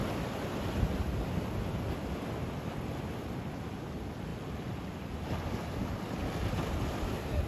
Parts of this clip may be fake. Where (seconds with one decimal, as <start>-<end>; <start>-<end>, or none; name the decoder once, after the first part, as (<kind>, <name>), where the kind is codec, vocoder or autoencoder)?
4.3-4.9 (vocoder, BigVGAN v2); 6.2-6.7

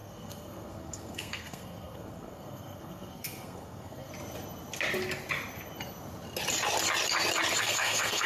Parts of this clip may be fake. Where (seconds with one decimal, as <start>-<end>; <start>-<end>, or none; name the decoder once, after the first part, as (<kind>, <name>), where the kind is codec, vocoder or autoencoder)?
0.0-4.1 (codec, SNAC); 7.6-8.3

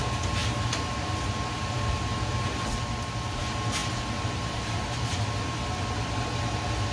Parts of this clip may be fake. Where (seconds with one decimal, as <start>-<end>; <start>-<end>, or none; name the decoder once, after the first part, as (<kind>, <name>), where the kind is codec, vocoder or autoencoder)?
none

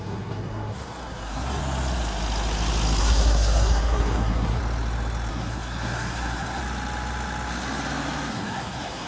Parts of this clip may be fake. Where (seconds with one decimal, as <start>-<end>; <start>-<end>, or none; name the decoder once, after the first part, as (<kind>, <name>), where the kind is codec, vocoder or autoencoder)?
0.0-1.6 (codec, SNAC); 3.0-4.6; 5.3-6.6; 8.3-9.1

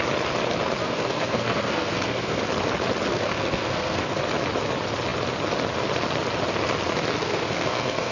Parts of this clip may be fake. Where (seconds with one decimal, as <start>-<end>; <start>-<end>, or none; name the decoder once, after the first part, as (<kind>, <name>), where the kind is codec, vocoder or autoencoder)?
0.8-2.4 (codec, SNAC); 3.1-4.2; 7.2-8.1

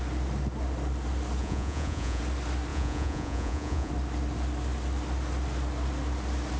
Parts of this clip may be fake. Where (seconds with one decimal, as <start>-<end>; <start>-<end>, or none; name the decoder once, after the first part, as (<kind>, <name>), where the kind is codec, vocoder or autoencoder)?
1.4-2.2 (vocoder, Vocos); 2.7-3.9

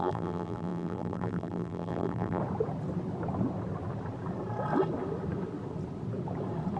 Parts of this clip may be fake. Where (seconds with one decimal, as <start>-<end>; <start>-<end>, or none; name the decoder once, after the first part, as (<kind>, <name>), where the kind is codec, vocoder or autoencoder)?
0.0-2.4 (vocoder, BigVGAN v2)